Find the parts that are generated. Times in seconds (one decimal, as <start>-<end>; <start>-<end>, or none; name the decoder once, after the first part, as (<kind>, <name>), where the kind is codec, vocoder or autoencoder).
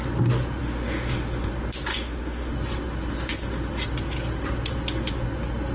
0.6-1.5 (autoencoder, DAC-VAE); 1.9-2.5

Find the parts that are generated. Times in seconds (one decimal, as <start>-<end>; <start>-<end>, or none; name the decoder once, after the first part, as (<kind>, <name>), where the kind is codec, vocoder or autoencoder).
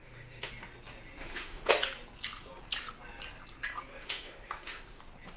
0.0-0.5 (autoencoder, DAC-VAE); 1.2-1.7; 3.9-5.0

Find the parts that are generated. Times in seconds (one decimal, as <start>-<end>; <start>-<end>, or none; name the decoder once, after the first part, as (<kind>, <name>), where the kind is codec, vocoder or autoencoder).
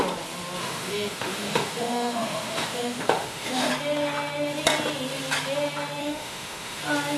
0.6-3.7 (autoencoder, DAC-VAE); 6.0-6.8